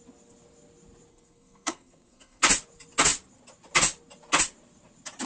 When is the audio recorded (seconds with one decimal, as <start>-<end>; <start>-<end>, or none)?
0.0-1.1; 2.4-5.3